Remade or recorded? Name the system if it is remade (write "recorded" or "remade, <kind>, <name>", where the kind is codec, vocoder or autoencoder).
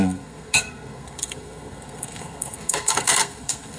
remade, codec, SNAC